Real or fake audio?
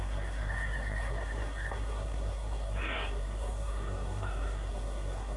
fake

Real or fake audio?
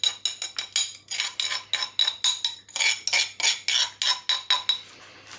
real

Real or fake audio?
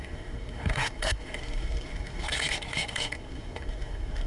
fake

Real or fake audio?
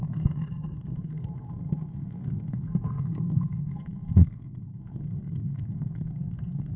fake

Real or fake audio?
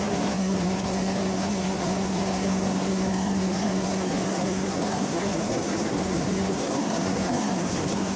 fake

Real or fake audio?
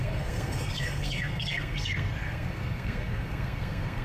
fake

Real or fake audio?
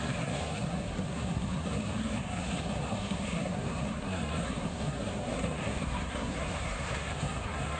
fake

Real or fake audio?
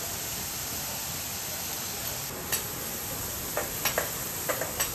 real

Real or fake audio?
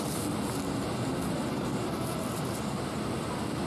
real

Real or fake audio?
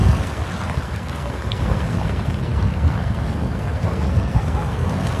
fake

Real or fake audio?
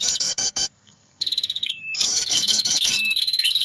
fake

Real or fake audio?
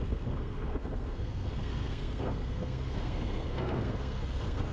fake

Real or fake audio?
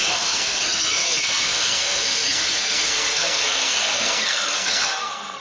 fake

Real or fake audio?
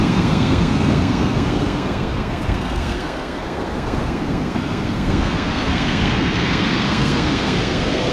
fake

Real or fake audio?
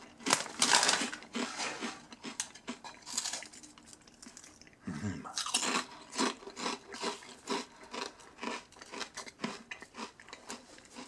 real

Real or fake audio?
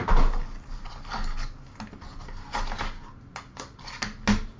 real